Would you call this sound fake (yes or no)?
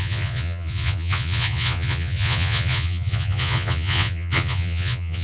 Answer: yes